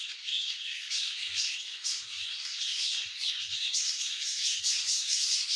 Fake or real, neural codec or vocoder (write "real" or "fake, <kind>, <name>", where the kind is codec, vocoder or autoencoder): fake, codec, SNAC